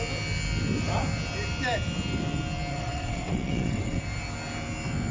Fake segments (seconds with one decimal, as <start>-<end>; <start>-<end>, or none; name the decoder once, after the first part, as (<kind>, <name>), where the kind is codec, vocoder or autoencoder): 2.7-4.0 (vocoder, WaveNeXt)